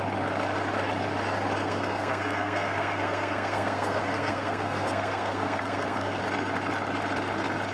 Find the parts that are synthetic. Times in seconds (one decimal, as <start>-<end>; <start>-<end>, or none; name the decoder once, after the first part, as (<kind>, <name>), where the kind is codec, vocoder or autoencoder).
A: 1.6-6.2 (codec, SNAC)